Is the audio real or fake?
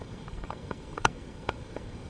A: fake